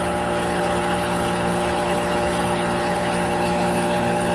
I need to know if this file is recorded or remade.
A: remade